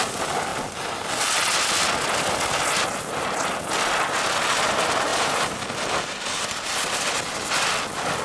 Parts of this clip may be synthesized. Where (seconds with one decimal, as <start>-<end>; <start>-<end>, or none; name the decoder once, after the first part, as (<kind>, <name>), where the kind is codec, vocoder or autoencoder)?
none